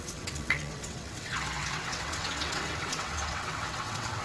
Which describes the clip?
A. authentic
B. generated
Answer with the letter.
B